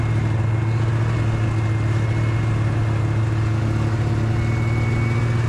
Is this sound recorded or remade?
recorded